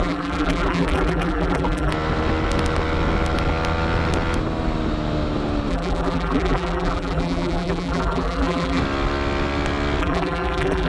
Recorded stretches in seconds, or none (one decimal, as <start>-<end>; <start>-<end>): 1.9-5.7; 8.8-10.0